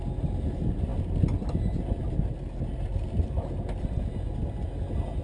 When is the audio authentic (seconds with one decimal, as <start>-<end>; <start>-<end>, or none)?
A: 0.0-5.2